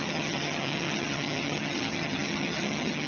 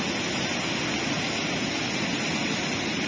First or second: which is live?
second